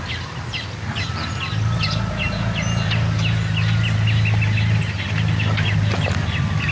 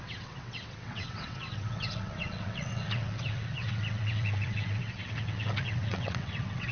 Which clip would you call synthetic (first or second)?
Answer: second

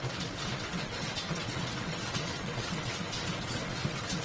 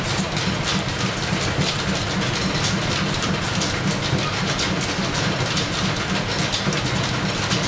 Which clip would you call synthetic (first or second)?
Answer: first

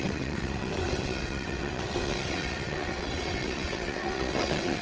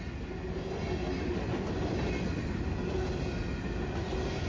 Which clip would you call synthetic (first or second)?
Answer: first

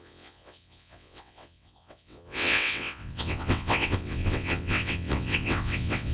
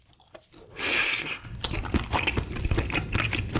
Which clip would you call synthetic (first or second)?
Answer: first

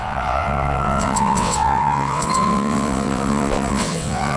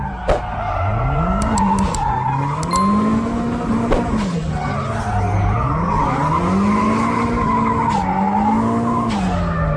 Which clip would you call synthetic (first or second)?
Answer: first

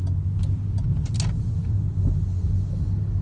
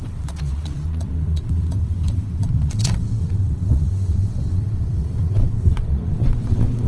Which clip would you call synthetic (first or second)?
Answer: second